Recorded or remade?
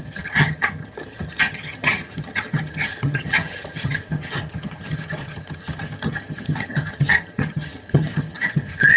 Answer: remade